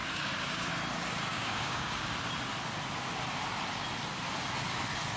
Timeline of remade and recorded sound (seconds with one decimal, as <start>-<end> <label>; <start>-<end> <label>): 0.0-0.7 remade; 0.7-1.3 recorded; 1.3-2.1 remade; 2.1-5.2 recorded